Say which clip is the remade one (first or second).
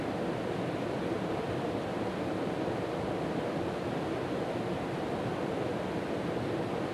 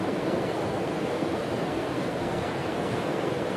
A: second